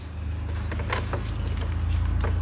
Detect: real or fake real